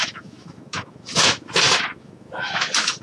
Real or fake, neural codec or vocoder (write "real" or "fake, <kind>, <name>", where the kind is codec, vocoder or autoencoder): fake, autoencoder, DAC-VAE